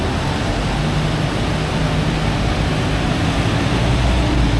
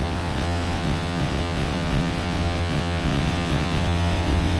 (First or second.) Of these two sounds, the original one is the first